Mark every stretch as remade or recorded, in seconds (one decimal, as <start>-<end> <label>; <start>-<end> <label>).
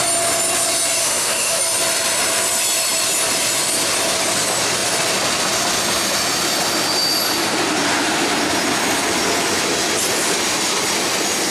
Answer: 0.0-1.0 recorded; 1.0-1.6 remade; 1.6-11.5 recorded